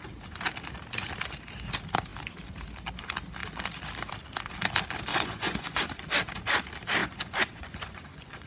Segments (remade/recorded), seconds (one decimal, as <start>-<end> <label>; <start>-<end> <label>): 0.0-5.1 recorded; 5.1-5.8 remade; 5.8-7.0 recorded; 7.0-8.5 remade

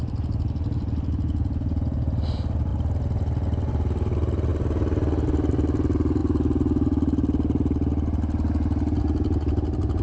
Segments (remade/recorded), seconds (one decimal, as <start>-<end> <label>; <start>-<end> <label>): 0.0-10.0 recorded

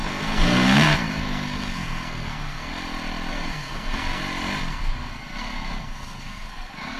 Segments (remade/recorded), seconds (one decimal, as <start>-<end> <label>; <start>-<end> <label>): 0.0-2.7 remade; 2.7-3.3 recorded; 3.3-4.2 remade; 4.2-4.7 recorded; 4.7-7.0 remade

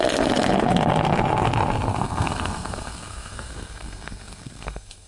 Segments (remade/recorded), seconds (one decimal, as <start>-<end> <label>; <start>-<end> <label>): 0.0-1.9 recorded; 1.9-5.1 remade

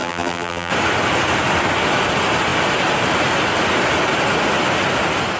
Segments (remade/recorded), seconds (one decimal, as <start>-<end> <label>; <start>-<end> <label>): 0.0-0.7 remade; 0.7-5.4 recorded

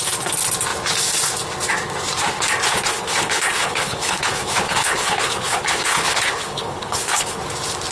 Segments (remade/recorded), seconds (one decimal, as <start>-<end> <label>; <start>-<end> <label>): 0.0-2.7 recorded; 2.7-7.4 remade; 7.4-7.9 recorded

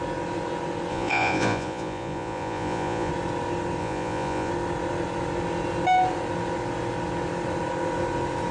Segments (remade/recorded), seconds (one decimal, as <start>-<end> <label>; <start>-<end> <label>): 0.0-0.9 recorded; 0.9-3.1 remade; 3.1-3.8 recorded; 3.8-4.5 remade; 4.5-8.5 recorded

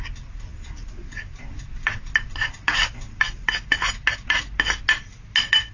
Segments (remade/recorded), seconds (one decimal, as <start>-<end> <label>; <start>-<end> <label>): 0.0-0.5 recorded; 0.5-3.9 remade; 3.9-5.7 recorded